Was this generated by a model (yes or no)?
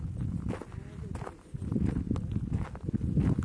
no